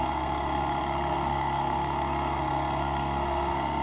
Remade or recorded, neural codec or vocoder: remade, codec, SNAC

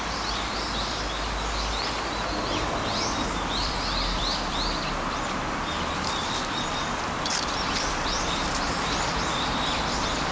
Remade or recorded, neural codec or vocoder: remade, vocoder, BigVGAN v2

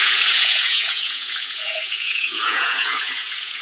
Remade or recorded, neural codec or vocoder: remade, vocoder, Vocos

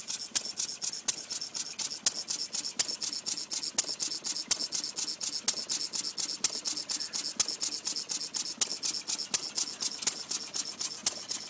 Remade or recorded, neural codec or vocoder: recorded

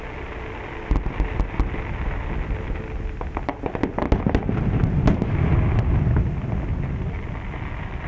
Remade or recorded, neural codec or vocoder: recorded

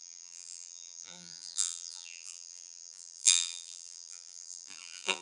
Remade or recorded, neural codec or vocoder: remade, vocoder, BigVGAN v2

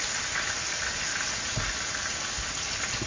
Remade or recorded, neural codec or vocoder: recorded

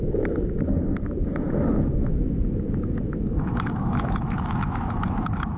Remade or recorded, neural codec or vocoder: remade, autoencoder, DAC-VAE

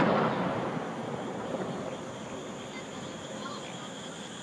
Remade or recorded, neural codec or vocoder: recorded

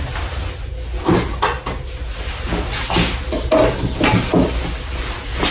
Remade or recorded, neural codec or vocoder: recorded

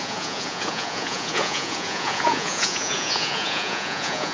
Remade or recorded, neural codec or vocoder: remade, vocoder, Vocos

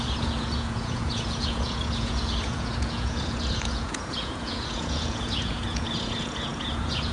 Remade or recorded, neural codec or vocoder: remade, vocoder, Vocos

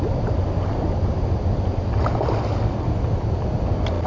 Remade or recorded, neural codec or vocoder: recorded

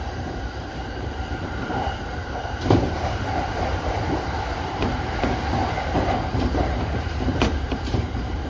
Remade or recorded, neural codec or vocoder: remade, vocoder, BigVGAN v2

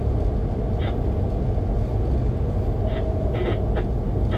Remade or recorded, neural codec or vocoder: recorded